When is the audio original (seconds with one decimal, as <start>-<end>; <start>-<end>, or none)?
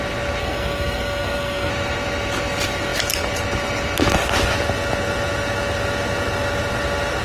0.0-0.4; 1.7-7.2